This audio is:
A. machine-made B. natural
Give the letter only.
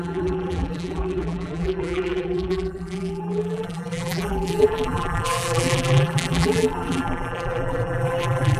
A